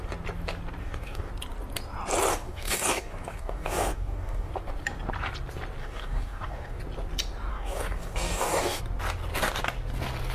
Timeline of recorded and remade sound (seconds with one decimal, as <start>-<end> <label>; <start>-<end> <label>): 0.0-0.8 recorded; 0.8-1.3 remade; 1.3-2.3 recorded; 2.3-4.5 remade; 4.5-5.8 recorded; 5.8-6.8 remade; 6.8-7.5 recorded; 7.5-8.8 remade; 8.8-10.3 recorded